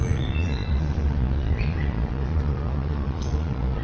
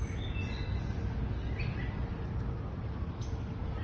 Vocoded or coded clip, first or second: first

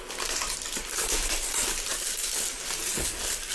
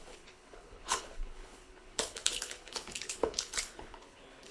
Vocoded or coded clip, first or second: second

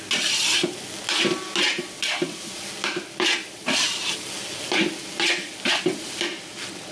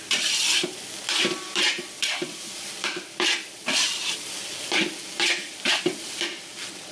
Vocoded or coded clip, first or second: second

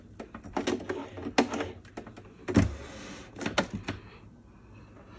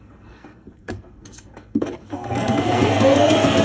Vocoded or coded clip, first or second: second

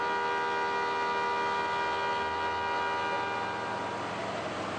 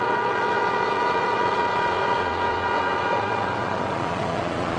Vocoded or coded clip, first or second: second